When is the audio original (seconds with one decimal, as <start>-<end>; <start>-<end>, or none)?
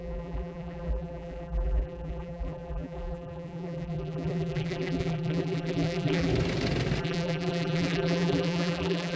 6.3-7.0